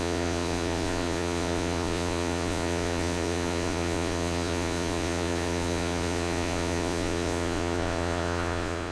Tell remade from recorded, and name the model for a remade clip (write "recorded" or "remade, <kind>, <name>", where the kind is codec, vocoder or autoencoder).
remade, vocoder, Vocos